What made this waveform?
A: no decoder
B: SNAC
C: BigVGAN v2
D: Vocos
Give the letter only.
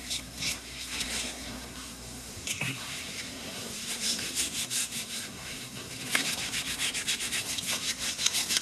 B